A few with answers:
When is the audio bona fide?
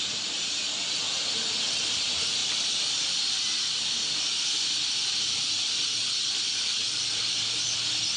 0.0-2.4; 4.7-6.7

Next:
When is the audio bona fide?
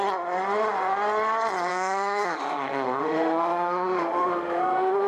0.0-1.7